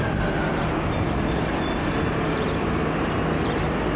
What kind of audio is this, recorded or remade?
recorded